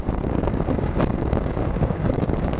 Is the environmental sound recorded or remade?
remade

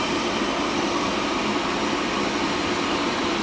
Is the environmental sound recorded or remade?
remade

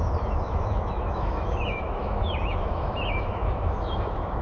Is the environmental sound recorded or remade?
remade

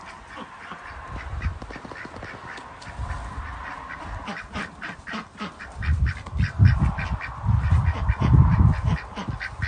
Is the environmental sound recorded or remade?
remade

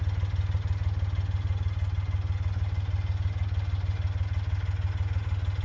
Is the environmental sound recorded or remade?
recorded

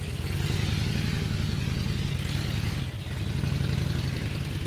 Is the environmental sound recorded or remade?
recorded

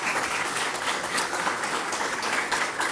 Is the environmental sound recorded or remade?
remade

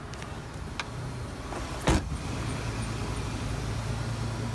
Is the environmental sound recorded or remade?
recorded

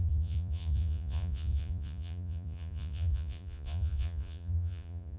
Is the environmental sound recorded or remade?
remade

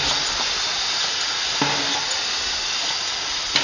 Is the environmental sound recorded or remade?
recorded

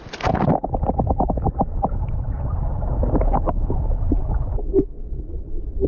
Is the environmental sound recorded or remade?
recorded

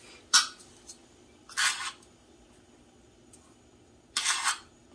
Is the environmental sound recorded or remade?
recorded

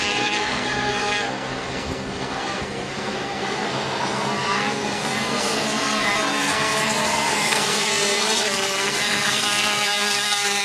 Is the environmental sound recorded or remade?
remade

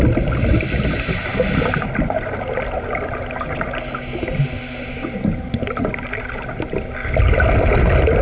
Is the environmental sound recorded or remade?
recorded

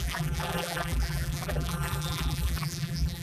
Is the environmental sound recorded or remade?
remade